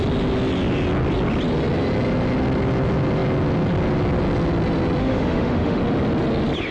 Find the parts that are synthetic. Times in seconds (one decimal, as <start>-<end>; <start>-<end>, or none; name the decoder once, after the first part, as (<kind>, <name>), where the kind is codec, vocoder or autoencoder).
5.0-5.8 (autoencoder, DAC-VAE)